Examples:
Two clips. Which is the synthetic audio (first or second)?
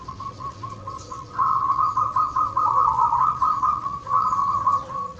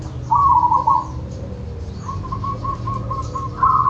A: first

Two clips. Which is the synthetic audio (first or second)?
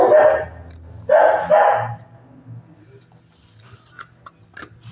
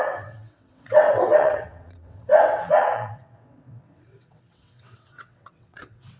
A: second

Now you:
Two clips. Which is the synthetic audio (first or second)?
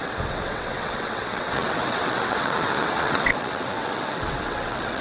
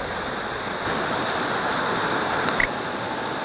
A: first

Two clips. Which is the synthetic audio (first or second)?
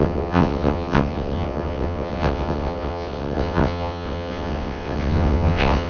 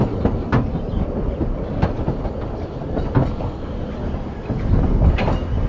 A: first